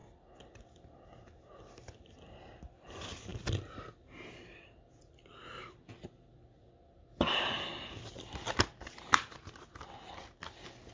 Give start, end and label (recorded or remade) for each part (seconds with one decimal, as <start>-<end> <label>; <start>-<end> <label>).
0.0-10.9 recorded